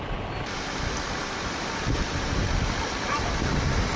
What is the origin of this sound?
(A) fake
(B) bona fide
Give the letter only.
B